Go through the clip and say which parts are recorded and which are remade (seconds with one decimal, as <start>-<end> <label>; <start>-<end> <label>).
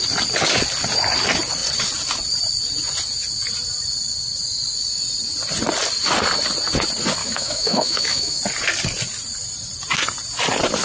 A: 0.0-7.2 recorded; 7.2-8.4 remade; 8.4-10.8 recorded